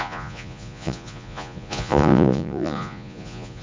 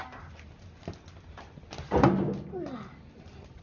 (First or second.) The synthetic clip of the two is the first